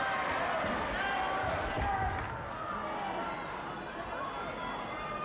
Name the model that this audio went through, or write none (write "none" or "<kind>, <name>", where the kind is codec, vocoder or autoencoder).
none